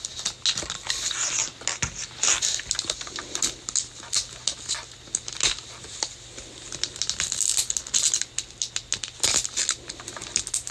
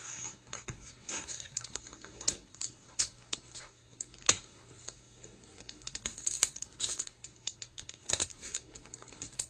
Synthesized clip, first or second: second